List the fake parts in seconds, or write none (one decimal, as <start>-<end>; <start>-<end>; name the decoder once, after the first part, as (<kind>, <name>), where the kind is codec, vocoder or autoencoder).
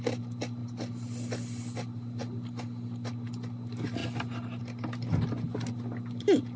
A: none